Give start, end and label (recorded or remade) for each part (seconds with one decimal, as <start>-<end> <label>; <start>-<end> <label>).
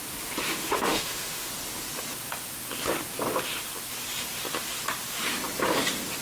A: 0.0-0.5 recorded; 0.5-1.5 remade; 1.5-6.2 recorded